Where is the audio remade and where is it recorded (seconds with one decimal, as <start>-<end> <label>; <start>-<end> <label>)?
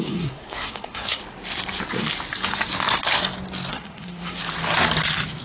0.0-1.2 remade; 1.2-3.7 recorded; 3.7-4.4 remade; 4.4-5.4 recorded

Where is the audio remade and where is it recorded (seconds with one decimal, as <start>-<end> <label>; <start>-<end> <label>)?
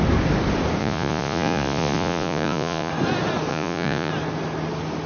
0.0-0.8 recorded; 0.8-2.9 remade; 2.9-3.5 recorded; 3.5-4.1 remade; 4.1-5.1 recorded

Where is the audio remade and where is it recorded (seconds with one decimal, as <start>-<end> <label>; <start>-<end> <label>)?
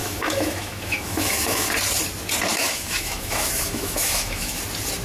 0.0-1.7 remade; 1.7-2.5 recorded; 2.5-4.6 remade; 4.6-5.0 recorded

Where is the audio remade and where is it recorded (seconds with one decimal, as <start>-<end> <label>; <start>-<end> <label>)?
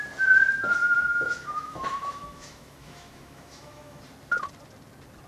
0.0-0.8 recorded; 0.8-4.0 remade; 4.0-5.3 recorded